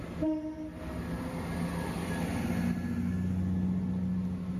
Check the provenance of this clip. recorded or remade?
recorded